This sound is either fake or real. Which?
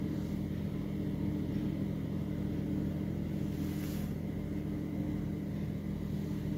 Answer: real